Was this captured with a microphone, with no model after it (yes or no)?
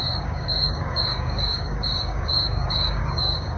no